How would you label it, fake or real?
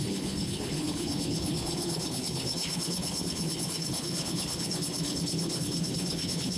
fake